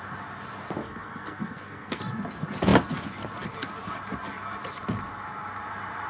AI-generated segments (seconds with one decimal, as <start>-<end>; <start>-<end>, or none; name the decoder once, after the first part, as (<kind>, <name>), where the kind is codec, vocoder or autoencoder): 0.8-2.0 (codec, SNAC)